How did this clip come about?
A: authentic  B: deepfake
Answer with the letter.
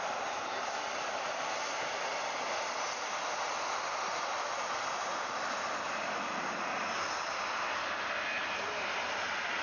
A